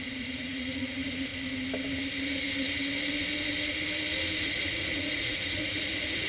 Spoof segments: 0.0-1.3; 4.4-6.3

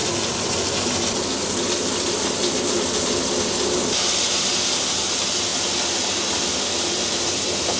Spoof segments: none

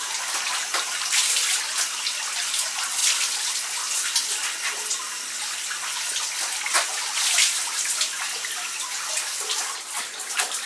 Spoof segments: none